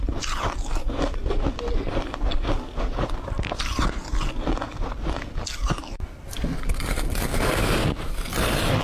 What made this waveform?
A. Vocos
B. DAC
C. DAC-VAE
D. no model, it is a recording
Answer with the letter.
D